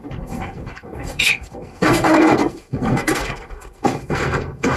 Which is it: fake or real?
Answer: fake